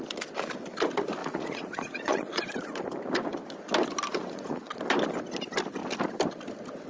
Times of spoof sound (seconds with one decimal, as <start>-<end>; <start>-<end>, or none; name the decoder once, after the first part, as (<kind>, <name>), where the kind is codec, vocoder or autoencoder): 1.2-2.4 (vocoder, Vocos); 4.1-4.8